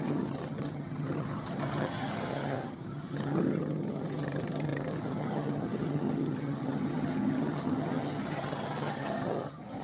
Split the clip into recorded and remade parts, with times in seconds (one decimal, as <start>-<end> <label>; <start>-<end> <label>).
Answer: 0.0-9.8 remade